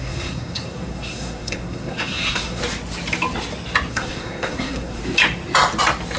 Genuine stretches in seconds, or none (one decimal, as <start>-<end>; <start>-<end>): 2.6-3.9; 5.0-6.2

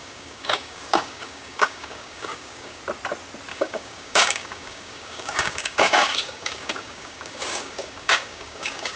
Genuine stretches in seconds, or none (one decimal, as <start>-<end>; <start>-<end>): 2.8-3.5

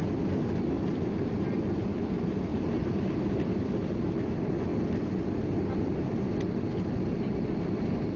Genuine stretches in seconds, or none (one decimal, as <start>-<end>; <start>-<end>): 0.0-2.5; 3.5-8.2

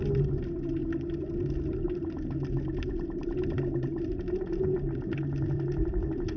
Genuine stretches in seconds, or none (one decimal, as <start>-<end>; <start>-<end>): 0.0-6.4

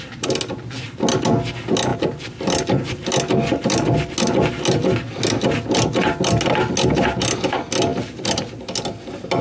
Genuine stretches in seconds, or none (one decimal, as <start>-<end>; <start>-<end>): 0.0-7.9; 8.4-9.4